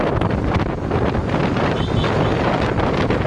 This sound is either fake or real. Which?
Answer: real